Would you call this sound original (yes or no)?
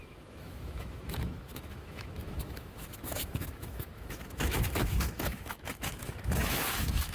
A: no